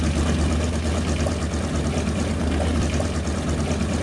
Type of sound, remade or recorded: recorded